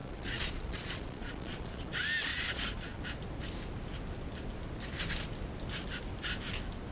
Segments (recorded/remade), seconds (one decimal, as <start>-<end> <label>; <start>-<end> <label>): 0.0-1.9 remade; 1.9-2.3 recorded; 2.3-3.0 remade; 3.0-6.9 recorded